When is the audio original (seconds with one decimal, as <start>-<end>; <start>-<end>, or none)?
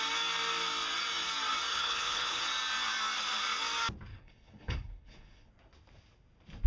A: 0.0-1.7; 2.4-4.1; 5.5-6.7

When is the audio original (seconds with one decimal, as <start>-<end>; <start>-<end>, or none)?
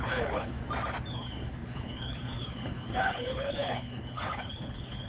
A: 0.6-1.1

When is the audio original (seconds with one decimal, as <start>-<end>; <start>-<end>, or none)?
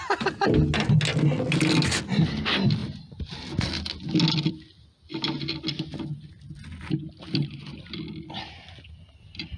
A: 0.0-9.6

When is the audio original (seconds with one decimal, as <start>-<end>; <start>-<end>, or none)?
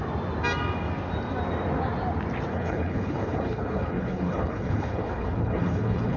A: 0.0-2.5